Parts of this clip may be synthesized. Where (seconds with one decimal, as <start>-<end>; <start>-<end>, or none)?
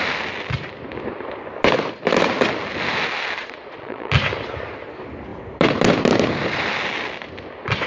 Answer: 3.4-4.1